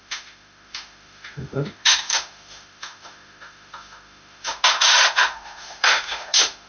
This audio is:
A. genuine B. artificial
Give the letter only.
B